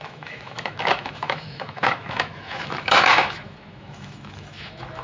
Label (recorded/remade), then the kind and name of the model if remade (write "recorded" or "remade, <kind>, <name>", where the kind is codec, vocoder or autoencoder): remade, autoencoder, DAC-VAE